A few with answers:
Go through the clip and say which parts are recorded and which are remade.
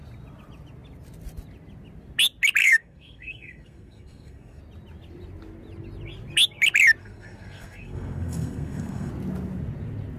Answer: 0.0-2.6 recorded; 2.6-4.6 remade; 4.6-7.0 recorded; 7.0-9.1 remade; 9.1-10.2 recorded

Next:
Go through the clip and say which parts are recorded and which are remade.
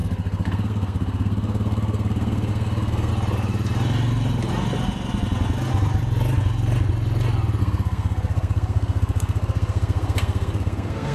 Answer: 0.0-3.1 remade; 3.1-7.6 recorded; 7.6-11.1 remade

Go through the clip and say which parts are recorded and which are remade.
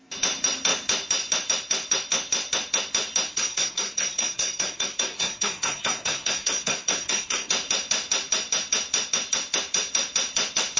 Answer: 0.0-3.3 recorded; 3.3-7.5 remade; 7.5-10.8 recorded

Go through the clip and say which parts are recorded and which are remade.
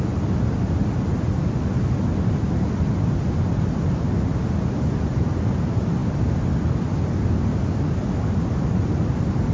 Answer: 0.0-9.5 recorded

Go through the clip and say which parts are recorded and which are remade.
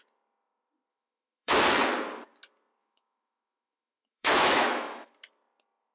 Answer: 0.0-0.9 recorded; 0.9-1.6 remade; 1.6-2.8 recorded; 2.8-5.1 remade; 5.1-5.9 recorded